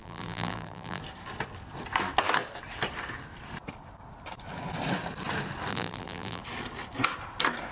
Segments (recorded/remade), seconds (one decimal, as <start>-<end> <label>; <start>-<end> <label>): 0.0-1.0 remade; 1.0-5.7 recorded; 5.7-6.4 remade; 6.4-7.7 recorded